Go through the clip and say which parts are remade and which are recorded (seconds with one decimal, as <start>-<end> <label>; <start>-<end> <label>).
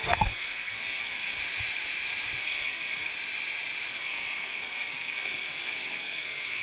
0.0-1.4 remade; 1.4-2.4 recorded; 2.4-3.1 remade; 3.1-3.9 recorded; 3.9-6.6 remade